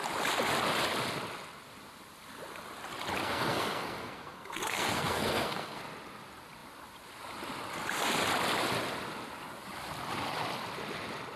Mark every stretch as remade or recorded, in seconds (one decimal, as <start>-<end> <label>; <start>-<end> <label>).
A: 0.0-3.2 recorded; 3.2-5.8 remade; 5.8-11.4 recorded